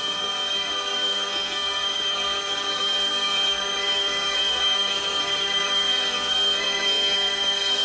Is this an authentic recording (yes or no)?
no